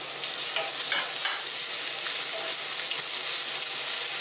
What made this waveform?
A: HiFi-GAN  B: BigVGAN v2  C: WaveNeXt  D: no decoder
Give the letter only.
D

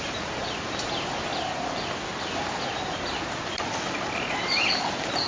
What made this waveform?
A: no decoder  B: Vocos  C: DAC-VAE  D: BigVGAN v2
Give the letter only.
A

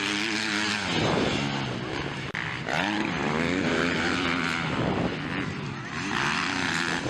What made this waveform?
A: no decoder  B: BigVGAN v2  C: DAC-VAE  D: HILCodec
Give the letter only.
A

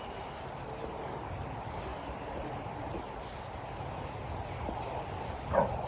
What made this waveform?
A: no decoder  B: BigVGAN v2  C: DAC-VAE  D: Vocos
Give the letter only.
A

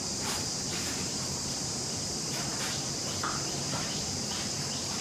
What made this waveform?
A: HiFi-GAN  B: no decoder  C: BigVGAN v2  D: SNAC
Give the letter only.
C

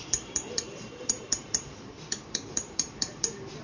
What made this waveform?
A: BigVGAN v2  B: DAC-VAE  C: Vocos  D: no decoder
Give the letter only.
A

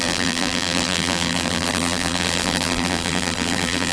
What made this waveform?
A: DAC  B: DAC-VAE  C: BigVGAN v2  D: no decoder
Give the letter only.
C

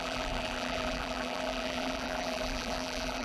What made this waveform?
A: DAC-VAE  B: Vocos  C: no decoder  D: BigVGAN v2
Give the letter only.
D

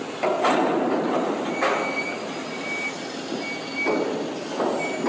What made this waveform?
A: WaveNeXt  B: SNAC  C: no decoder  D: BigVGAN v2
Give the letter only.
C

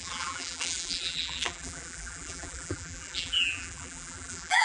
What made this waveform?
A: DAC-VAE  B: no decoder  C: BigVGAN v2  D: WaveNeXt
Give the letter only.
C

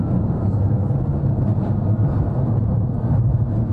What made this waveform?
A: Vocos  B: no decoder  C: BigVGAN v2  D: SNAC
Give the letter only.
C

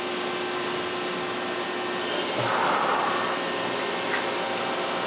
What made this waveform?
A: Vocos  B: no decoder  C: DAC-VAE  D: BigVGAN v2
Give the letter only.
B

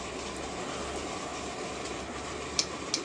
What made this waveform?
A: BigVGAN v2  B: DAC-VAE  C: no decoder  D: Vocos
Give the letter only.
C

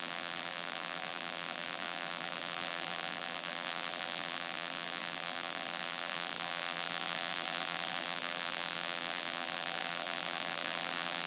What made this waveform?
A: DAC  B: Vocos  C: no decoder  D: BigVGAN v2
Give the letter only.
D